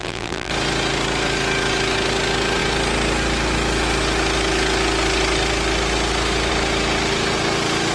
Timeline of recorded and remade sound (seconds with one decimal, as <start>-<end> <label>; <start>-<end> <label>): 0.0-0.5 remade; 0.5-7.9 recorded